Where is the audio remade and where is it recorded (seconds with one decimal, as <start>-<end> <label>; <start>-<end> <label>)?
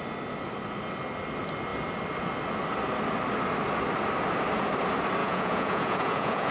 0.0-5.2 recorded; 5.2-6.5 remade